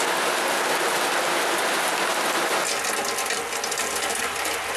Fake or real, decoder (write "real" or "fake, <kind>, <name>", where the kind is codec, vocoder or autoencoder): real